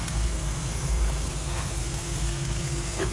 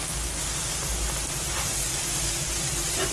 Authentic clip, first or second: second